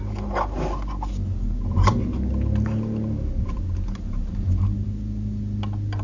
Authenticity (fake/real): real